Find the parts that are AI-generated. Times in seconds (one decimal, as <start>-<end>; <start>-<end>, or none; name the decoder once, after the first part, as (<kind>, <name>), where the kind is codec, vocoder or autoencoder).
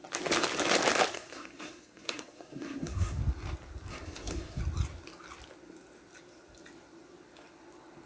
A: 1.1-3.2 (codec, SNAC); 3.9-4.6